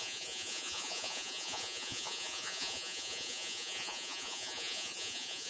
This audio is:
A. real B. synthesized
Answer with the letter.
B